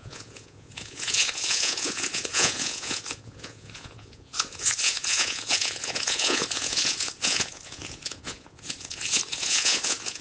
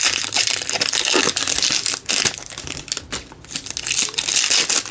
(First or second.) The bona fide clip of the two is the second